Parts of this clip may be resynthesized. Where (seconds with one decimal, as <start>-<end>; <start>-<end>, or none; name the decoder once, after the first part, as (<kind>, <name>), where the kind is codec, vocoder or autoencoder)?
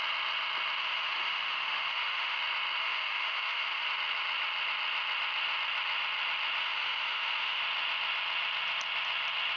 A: 0.8-2.4 (autoencoder, DAC-VAE); 2.8-3.9; 6.6-7.6